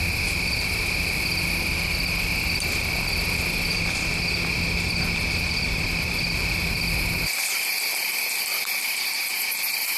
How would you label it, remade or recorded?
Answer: recorded